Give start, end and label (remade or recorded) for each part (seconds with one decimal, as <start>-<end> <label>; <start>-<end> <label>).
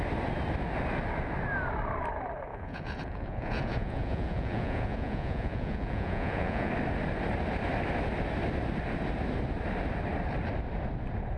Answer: 0.0-2.5 recorded; 2.5-6.7 remade; 6.7-11.4 recorded